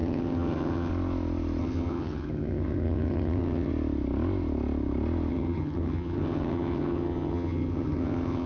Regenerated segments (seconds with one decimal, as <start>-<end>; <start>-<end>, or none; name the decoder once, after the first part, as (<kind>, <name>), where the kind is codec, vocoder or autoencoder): 0.0-0.9 (vocoder, HiFi-GAN); 1.6-3.7; 5.3-8.5